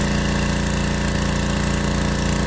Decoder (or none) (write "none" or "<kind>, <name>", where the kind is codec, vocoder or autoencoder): none